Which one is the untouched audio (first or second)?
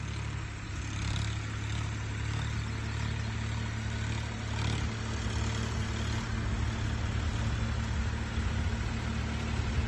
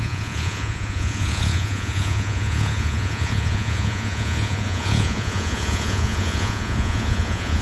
first